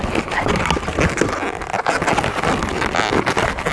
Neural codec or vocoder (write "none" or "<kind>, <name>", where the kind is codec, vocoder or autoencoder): none